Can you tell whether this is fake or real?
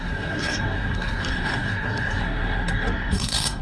fake